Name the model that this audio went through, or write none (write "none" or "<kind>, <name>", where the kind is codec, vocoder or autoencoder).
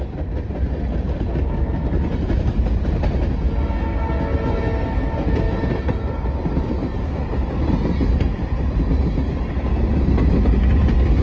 none